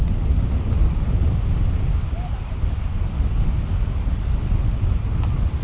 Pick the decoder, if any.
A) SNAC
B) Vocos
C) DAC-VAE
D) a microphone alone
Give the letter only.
D